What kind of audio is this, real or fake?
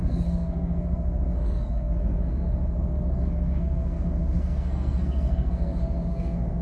fake